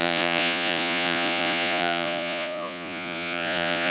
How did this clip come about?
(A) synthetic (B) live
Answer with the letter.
A